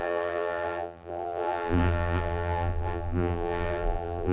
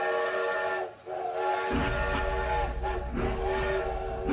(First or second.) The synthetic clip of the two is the first